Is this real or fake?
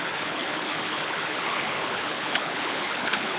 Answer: fake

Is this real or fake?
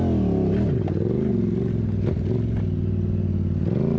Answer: real